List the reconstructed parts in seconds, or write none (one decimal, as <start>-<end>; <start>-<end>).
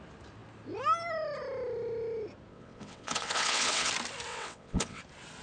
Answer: 2.5-3.9; 4.3-5.0